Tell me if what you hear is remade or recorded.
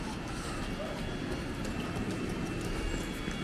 recorded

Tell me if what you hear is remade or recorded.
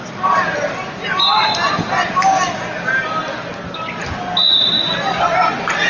recorded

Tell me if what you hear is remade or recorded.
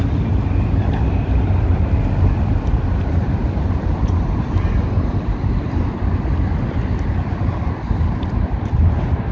recorded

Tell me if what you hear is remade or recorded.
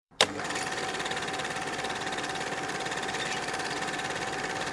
remade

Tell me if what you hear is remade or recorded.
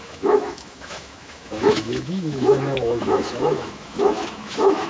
remade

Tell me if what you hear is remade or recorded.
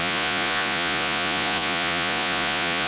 remade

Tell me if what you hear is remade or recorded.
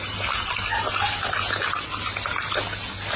recorded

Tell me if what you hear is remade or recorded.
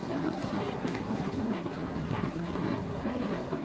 remade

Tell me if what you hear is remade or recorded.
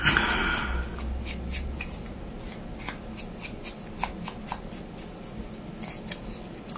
recorded